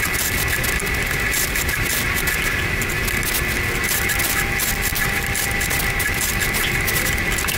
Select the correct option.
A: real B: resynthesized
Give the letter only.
A